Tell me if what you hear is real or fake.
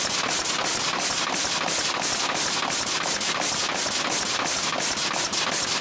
real